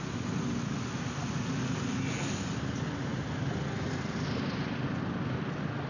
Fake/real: real